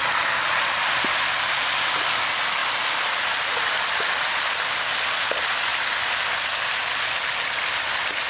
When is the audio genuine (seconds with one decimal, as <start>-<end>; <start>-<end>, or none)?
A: 0.0-2.6; 4.5-5.7; 7.1-8.3